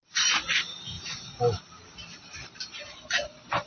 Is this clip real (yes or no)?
yes